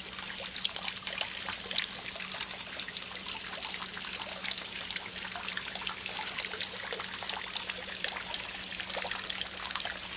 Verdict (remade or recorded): recorded